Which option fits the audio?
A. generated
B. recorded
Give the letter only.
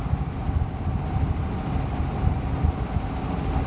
B